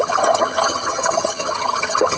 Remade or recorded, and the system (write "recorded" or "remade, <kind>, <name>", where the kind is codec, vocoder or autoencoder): remade, vocoder, HiFi-GAN